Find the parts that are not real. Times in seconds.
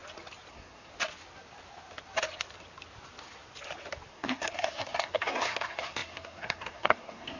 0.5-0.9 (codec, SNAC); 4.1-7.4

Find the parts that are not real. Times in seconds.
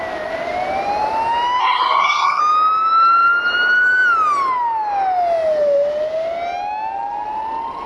1.6-2.4 (codec, SNAC)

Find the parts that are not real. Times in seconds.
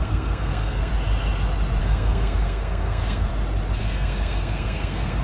0.0-0.9 (codec, SNAC); 1.8-3.3; 3.8-5.2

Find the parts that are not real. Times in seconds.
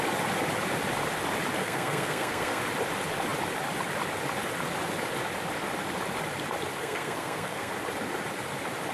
1.6-2.6 (codec, SNAC); 6.8-7.7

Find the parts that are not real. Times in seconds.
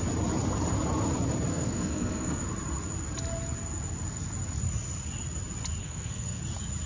1.5-2.4 (codec, SNAC); 5.8-6.4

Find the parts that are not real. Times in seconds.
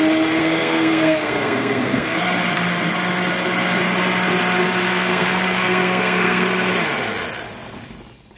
0.4-2.2 (codec, SNAC); 4.9-6.7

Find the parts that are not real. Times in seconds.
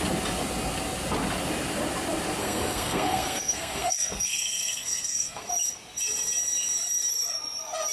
2.4-5.5 (codec, SNAC)